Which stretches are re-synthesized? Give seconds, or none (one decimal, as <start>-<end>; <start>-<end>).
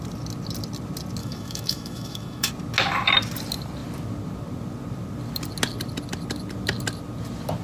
1.2-2.5